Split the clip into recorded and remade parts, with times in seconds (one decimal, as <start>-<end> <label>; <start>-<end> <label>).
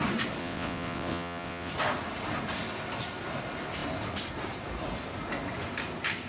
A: 0.0-0.4 recorded; 0.4-1.7 remade; 1.7-6.3 recorded